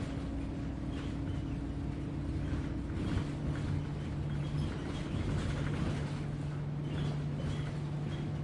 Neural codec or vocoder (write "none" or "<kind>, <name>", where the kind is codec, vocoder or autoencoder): none